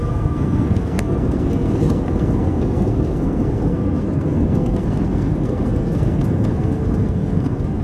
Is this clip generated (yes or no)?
yes